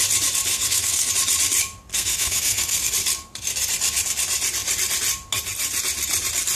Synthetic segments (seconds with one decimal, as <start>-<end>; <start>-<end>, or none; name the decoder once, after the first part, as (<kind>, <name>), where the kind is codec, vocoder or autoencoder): 0.5-1.1 (codec, SNAC); 1.9-2.9